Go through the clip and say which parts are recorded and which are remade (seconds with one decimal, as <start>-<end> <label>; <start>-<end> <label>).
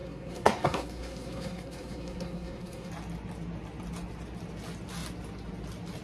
0.0-2.9 remade; 2.9-6.0 recorded